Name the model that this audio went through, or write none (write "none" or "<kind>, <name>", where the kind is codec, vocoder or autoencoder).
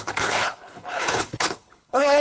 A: codec, HILCodec